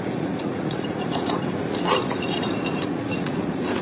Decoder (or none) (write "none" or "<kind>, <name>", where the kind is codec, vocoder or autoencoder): vocoder, Vocos